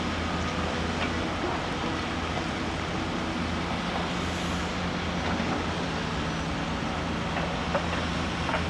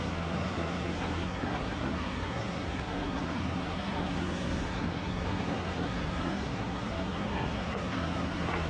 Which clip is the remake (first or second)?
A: second